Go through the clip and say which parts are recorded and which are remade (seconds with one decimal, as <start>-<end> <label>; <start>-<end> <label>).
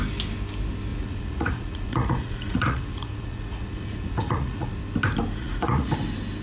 0.0-0.9 recorded; 0.9-4.7 remade; 4.7-5.4 recorded; 5.4-5.9 remade; 5.9-6.4 recorded